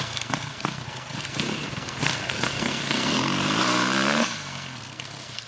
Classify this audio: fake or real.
fake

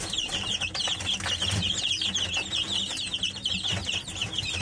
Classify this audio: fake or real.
real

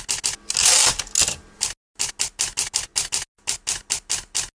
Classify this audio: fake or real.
real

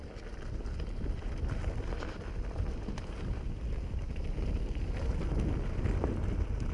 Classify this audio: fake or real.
real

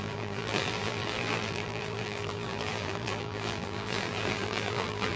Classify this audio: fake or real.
fake